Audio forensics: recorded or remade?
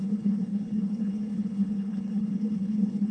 remade